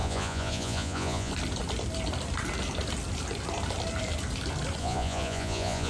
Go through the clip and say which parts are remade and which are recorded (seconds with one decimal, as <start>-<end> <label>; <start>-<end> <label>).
0.0-1.3 remade; 1.3-4.8 recorded; 4.8-5.9 remade